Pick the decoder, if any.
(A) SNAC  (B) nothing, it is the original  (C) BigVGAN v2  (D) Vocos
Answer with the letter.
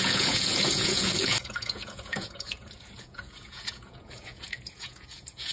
D